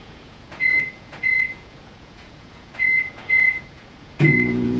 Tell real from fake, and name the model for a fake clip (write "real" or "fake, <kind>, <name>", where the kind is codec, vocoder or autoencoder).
fake, vocoder, Vocos